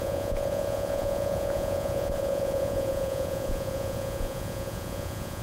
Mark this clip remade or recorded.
remade